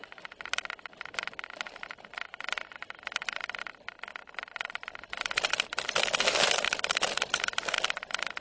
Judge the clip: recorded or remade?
recorded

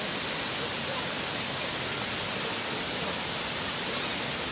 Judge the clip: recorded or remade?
recorded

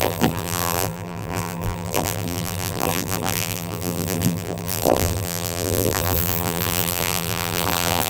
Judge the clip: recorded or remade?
remade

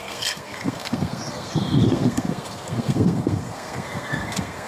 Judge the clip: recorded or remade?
remade